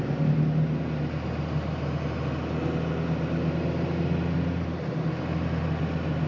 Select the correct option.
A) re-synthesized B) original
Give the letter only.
B